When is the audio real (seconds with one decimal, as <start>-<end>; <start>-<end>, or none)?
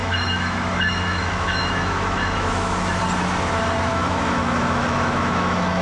3.0-3.9